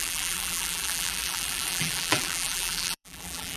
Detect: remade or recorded remade